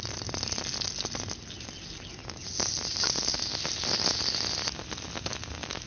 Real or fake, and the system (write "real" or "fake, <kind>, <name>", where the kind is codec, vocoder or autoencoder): real